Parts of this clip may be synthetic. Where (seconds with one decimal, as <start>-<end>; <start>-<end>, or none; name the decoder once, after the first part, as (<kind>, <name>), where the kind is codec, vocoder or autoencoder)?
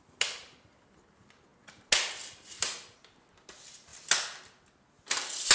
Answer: none